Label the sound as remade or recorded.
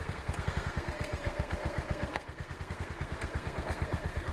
remade